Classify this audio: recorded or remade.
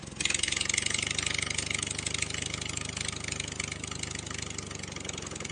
recorded